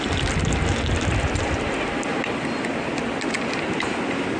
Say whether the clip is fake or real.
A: real